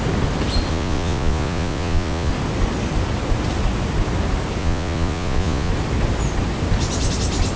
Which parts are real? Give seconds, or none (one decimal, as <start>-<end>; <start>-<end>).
0.0-0.7; 2.3-4.6; 5.7-7.6

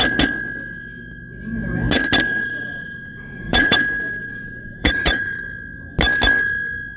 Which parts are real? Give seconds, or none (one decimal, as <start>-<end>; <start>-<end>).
0.0-2.3; 3.8-4.2; 5.4-7.0

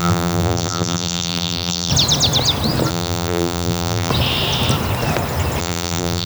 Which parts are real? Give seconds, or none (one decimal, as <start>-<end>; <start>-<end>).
1.9-2.9; 4.1-5.6

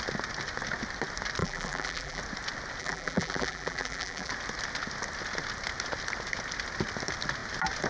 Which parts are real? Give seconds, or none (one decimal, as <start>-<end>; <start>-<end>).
0.0-1.4; 2.2-2.8; 4.3-7.9

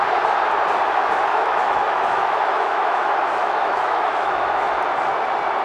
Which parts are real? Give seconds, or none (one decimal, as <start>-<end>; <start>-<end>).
0.0-1.3; 4.7-5.6

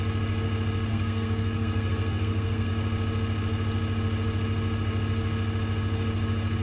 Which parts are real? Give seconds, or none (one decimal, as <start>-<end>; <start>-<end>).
0.0-0.9; 2.7-6.6

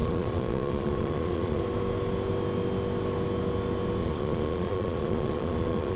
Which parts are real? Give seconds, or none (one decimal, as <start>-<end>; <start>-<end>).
1.6-4.0